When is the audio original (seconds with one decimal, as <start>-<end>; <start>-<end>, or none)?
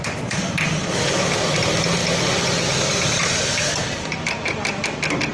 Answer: 0.0-5.3